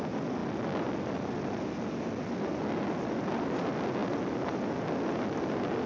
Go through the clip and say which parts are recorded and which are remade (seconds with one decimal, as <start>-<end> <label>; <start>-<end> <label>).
0.0-5.9 recorded